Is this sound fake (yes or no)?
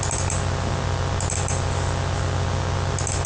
no